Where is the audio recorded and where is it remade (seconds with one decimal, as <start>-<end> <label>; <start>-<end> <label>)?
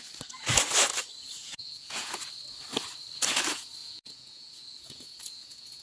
0.0-1.4 recorded; 1.4-2.2 remade; 2.2-3.8 recorded; 3.8-5.8 remade